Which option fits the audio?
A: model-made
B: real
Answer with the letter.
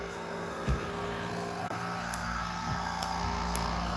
A